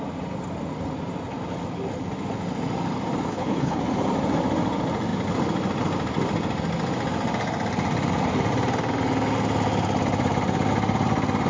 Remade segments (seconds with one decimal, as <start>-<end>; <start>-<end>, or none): 3.3-3.8